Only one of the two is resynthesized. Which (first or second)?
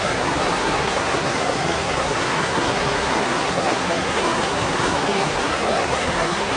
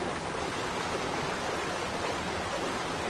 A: first